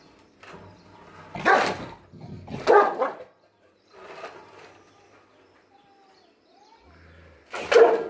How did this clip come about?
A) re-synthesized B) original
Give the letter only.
B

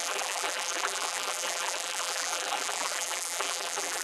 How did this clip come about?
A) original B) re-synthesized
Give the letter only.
B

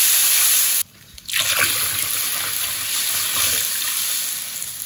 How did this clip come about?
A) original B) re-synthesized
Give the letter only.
A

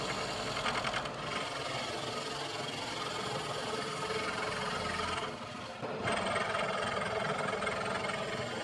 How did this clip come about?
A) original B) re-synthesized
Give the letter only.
A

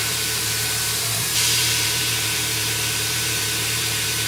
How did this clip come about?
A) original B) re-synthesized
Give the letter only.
B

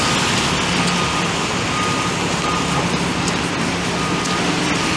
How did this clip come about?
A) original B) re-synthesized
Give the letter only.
A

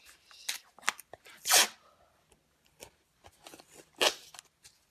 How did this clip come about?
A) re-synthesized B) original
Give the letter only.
B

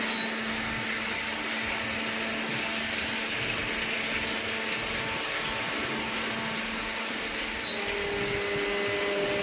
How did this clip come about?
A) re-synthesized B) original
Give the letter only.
B